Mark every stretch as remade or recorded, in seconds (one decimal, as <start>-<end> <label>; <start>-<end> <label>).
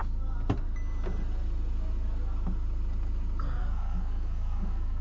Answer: 0.0-3.6 recorded; 3.6-5.0 remade